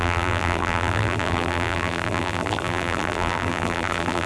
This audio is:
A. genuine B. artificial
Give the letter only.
B